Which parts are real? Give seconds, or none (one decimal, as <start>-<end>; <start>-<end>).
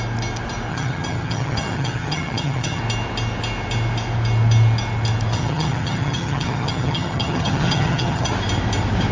0.0-0.7; 2.8-5.3; 8.3-9.1